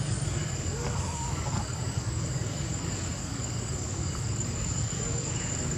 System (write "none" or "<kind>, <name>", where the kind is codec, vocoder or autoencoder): codec, DAC